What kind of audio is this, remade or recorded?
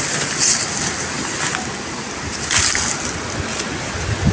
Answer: recorded